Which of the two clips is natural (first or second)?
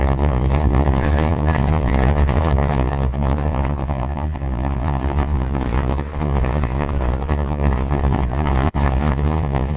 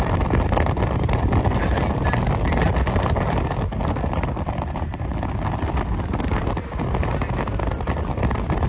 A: second